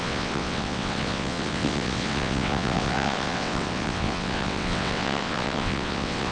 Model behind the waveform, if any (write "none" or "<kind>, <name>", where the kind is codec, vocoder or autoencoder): vocoder, WaveNeXt